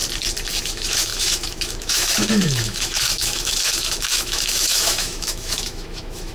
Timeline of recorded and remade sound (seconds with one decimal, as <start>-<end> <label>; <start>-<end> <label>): 0.0-0.6 recorded; 0.6-6.3 remade

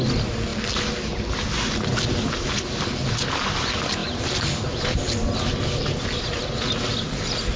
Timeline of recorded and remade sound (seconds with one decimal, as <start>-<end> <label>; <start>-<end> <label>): 0.0-7.6 recorded

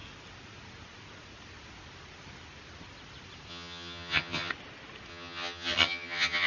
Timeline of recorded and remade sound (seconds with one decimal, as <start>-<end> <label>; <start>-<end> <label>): 0.0-3.5 recorded; 3.5-4.5 remade; 4.5-5.1 recorded; 5.1-6.5 remade